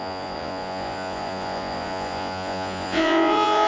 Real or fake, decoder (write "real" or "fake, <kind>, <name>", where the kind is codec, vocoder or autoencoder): fake, vocoder, Vocos